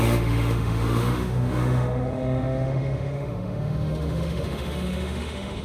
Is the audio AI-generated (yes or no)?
yes